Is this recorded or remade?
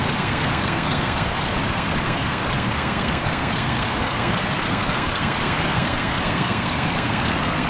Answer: remade